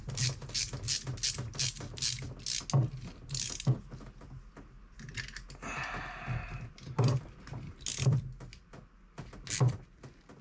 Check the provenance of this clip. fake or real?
real